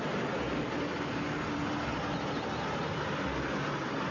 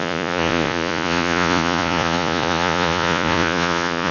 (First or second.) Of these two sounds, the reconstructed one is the second